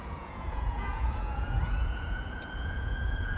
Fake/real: fake